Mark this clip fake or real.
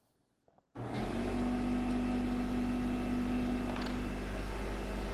real